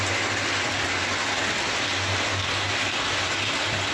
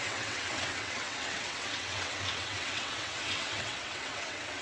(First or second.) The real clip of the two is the first